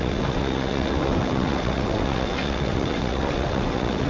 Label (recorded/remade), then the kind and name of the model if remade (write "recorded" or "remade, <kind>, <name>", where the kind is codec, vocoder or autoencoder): remade, vocoder, WaveNeXt